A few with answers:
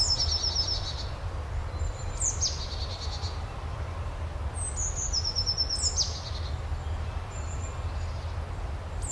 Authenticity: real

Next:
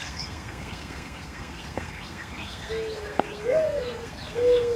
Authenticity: fake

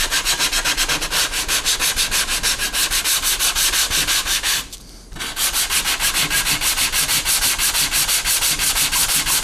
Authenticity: real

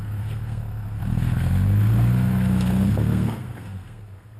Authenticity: fake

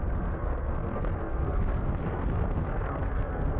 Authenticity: fake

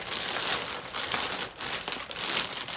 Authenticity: real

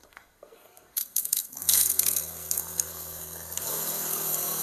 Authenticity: fake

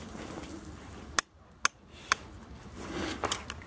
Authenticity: real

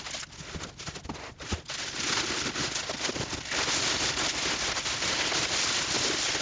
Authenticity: real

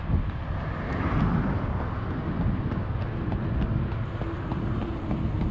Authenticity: real